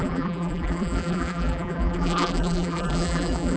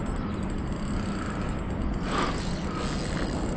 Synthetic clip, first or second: first